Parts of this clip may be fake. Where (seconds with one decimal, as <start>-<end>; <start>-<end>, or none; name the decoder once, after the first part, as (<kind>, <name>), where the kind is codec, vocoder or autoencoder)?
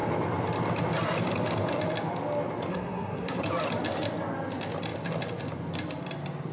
2.7-3.4 (codec, SNAC)